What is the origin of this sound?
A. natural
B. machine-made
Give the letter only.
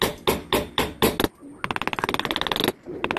A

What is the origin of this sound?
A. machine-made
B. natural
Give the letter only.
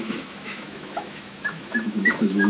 A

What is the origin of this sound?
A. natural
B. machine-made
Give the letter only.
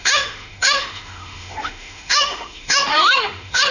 B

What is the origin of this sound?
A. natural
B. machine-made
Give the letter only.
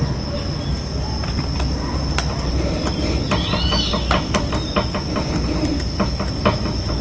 A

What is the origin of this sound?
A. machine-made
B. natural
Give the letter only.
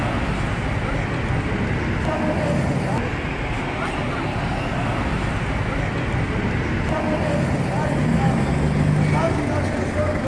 B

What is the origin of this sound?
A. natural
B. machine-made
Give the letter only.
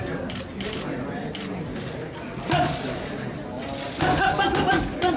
A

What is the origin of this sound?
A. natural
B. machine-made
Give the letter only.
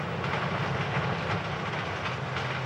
A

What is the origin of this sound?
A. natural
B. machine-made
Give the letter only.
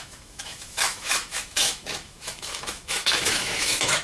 B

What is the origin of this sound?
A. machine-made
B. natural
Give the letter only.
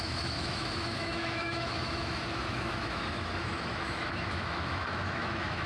A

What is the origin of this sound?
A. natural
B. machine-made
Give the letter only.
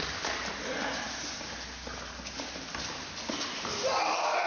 A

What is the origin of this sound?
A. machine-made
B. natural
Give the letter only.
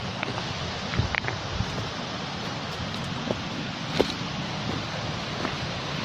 B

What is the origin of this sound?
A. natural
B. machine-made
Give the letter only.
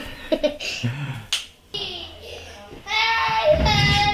A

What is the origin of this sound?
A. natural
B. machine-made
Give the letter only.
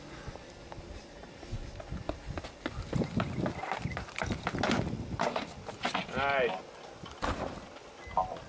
A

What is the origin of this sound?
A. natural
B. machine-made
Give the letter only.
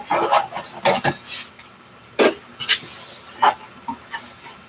A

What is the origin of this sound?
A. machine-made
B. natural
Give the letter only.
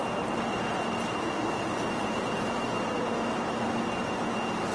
B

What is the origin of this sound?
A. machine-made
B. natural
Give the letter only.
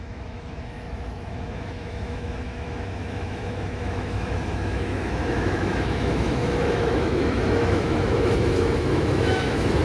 A